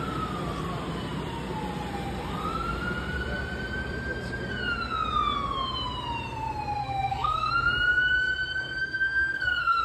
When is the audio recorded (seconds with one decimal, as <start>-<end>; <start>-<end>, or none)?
0.0-6.8; 7.5-8.8